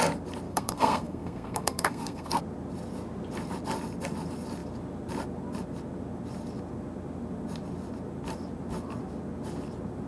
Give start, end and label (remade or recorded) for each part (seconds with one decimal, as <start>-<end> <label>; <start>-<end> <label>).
0.0-0.5 recorded; 0.5-2.4 remade; 2.4-10.1 recorded